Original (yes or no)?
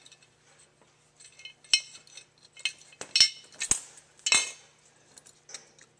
yes